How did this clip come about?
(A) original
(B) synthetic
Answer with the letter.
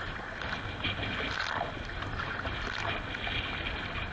A